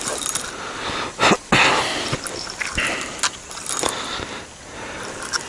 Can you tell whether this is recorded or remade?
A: recorded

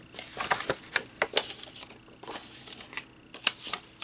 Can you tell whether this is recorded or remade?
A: recorded